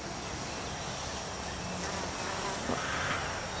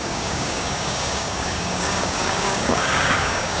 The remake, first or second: second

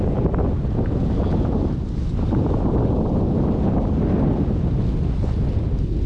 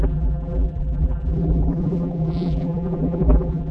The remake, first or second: second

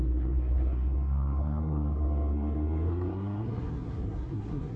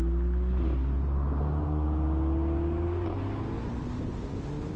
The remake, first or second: first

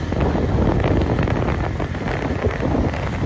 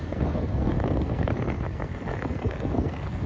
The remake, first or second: second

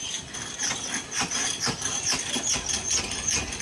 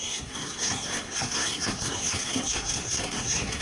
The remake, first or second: second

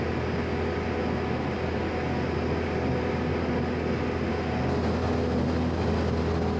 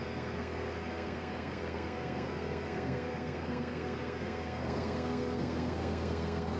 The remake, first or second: second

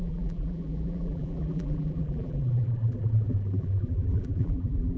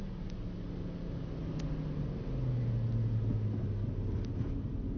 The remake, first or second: first